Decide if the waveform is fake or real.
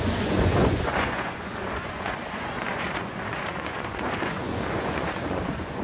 fake